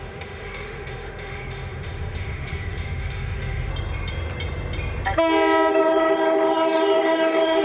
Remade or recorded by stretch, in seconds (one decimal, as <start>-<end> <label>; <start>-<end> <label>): 0.0-3.7 remade; 3.7-5.7 recorded; 5.7-7.6 remade